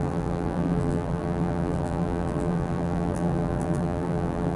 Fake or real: fake